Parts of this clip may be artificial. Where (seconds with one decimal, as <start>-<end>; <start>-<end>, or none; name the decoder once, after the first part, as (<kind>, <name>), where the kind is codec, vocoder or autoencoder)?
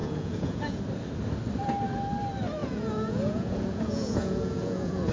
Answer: 0.0-0.8 (vocoder, Vocos); 2.6-5.1